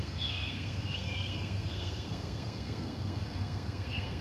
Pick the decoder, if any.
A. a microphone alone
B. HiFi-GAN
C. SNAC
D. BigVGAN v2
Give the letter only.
C